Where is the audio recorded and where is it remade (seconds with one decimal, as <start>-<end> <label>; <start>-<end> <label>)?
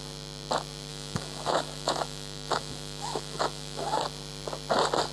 0.0-0.9 recorded; 0.9-4.0 remade; 4.0-5.1 recorded